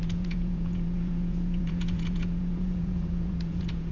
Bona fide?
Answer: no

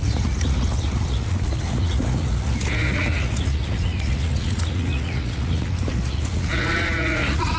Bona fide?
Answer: no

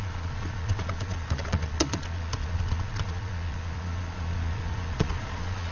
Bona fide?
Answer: no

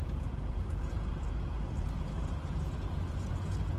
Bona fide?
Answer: no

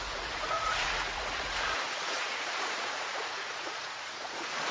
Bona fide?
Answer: no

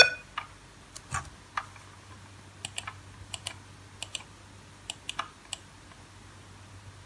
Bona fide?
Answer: yes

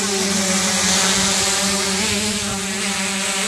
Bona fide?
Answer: yes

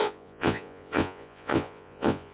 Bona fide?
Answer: no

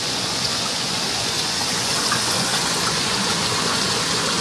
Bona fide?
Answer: no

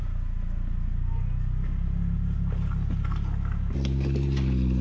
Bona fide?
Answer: yes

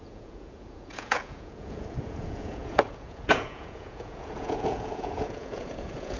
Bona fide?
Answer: no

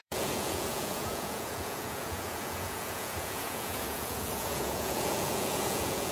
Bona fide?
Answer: no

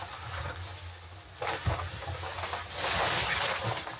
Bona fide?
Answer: yes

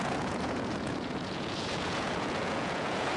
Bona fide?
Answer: no